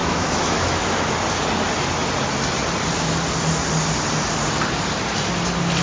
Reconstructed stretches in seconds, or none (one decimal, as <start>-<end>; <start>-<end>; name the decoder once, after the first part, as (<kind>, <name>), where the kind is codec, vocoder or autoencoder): 0.0-1.1 (autoencoder, DAC-VAE)